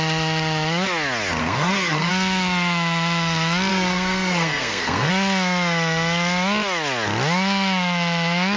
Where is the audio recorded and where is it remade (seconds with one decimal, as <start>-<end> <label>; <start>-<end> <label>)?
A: 0.0-1.4 recorded; 1.4-2.1 remade; 2.1-3.7 recorded; 3.7-5.1 remade; 5.1-8.6 recorded